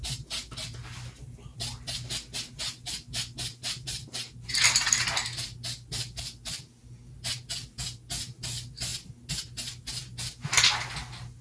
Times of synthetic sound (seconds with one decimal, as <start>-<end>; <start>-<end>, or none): 1.5-4.9